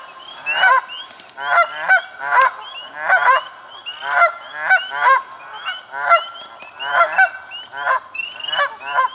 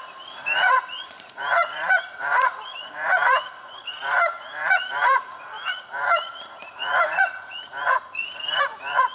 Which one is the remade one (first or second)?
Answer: second